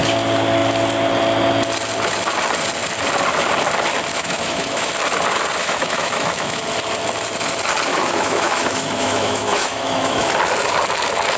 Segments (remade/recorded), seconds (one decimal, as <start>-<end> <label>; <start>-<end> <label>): 0.0-4.1 recorded; 4.1-4.9 remade; 4.9-5.6 recorded; 5.6-6.6 remade; 6.6-7.9 recorded; 7.9-10.3 remade; 10.3-11.4 recorded